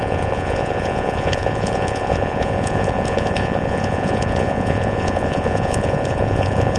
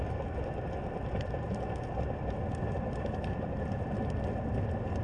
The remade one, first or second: first